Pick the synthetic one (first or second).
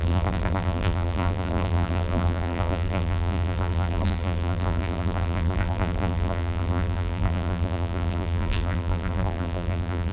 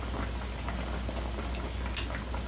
first